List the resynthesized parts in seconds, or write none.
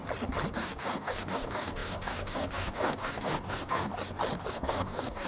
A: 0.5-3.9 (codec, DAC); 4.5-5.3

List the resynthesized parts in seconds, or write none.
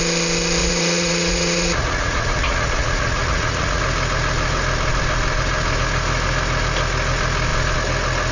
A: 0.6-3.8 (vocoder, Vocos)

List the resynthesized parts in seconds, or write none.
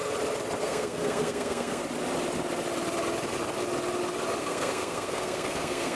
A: 0.6-1.8 (codec, SNAC); 4.4-5.9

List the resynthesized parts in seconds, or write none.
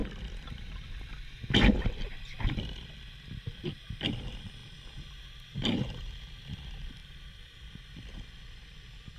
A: 0.0-4.6 (vocoder, BigVGAN v2); 6.0-9.2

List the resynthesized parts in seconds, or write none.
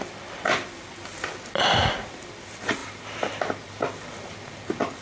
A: 2.8-3.4 (vocoder, BigVGAN v2)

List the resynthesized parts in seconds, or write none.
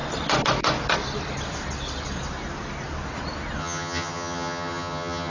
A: 3.6-5.3 (vocoder, HiFi-GAN)